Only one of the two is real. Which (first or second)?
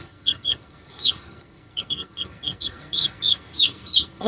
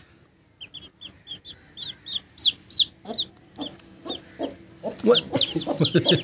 second